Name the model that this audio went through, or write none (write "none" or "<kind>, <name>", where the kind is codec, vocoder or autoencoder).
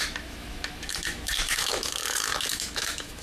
autoencoder, DAC-VAE